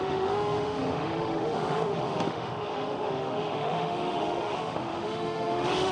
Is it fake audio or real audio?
fake